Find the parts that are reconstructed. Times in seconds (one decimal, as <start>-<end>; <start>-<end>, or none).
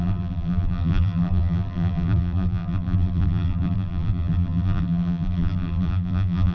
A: 0.0-6.5